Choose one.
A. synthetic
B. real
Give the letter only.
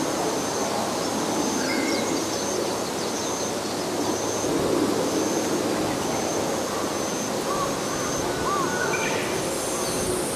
B